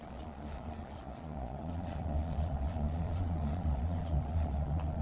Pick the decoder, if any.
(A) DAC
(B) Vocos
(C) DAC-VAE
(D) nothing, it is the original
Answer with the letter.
B